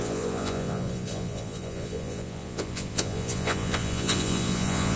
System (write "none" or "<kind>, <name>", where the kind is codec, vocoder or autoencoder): vocoder, Vocos